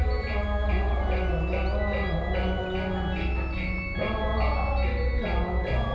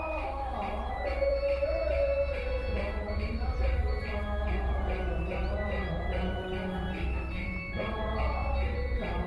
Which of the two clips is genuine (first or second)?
first